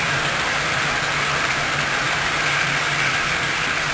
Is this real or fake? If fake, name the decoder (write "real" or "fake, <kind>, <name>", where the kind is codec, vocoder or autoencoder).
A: real